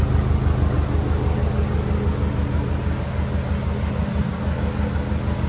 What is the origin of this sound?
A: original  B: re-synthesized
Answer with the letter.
A